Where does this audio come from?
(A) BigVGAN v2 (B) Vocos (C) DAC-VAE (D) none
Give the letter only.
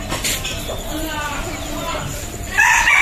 D